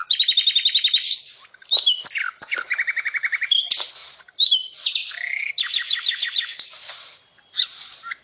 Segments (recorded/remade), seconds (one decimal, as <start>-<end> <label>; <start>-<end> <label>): 0.0-4.0 recorded; 4.0-4.5 remade; 4.5-8.2 recorded